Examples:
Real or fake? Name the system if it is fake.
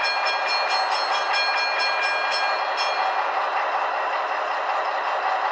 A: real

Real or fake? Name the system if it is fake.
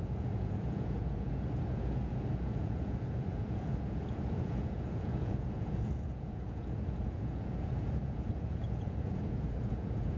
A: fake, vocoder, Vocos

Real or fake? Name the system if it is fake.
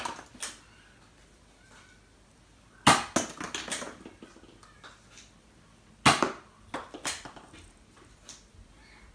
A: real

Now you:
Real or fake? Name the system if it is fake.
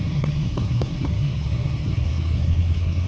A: fake, codec, SNAC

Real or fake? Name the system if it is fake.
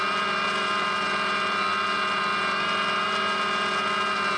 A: real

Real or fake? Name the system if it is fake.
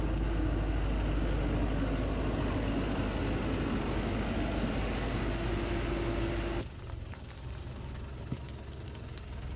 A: real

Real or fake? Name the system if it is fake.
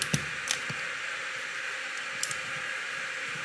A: real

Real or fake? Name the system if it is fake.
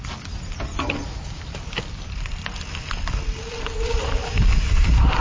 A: real